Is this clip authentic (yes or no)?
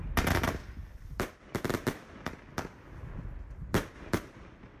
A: yes